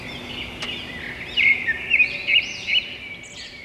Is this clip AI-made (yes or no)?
no